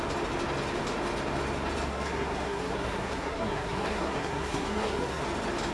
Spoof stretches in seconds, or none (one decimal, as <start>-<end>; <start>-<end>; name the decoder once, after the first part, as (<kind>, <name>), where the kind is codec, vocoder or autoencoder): 1.9-5.2 (codec, SNAC)